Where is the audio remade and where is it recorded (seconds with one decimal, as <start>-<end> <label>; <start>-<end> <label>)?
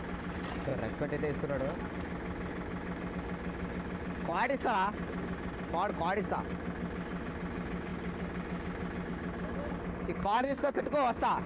0.0-10.2 recorded; 10.2-10.8 remade; 10.8-11.5 recorded